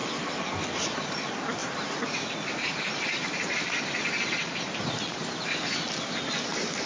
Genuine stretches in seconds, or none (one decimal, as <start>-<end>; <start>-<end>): 0.0-1.6; 5.5-6.9